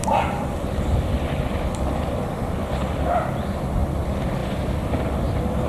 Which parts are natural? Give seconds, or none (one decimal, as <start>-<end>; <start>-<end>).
3.4-4.4; 5.3-5.7